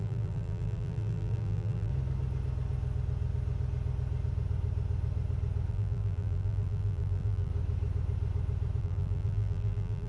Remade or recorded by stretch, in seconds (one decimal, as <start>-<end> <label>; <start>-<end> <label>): 0.0-1.9 remade; 1.9-5.7 recorded; 5.7-7.5 remade; 7.5-8.8 recorded; 8.8-10.1 remade